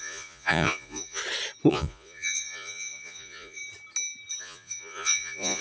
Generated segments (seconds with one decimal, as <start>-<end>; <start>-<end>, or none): 0.0-1.2; 1.7-3.6; 4.4-5.6